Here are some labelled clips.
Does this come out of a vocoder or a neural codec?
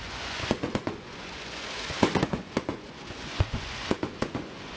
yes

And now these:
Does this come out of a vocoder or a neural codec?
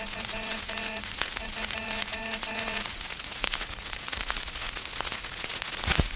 yes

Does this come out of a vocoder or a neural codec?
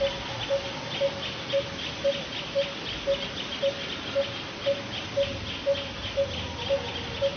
no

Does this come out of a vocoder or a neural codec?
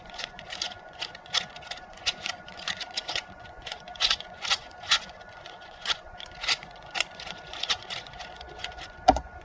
yes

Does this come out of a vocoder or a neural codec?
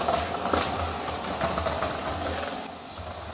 no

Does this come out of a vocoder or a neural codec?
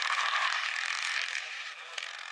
no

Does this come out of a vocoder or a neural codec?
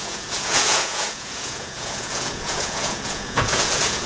yes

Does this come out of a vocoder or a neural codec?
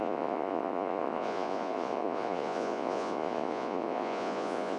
yes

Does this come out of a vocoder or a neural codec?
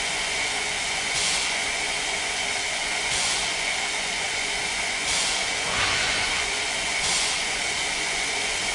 yes